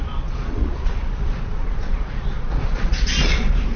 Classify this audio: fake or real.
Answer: fake